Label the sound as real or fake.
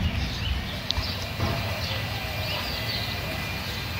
real